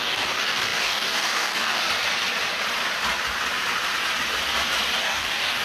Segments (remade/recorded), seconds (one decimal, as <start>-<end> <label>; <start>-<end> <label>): 0.0-1.8 remade; 1.8-5.0 recorded; 5.0-5.6 remade